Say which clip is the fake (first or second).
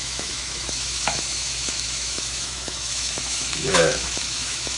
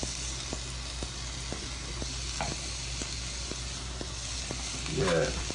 first